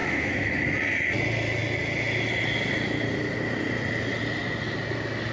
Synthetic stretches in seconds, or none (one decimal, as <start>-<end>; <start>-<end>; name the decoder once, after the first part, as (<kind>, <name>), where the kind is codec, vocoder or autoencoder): 0.0-0.6 (autoencoder, DAC-VAE)